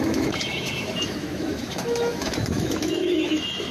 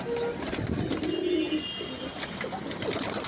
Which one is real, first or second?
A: second